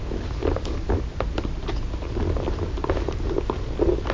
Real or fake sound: real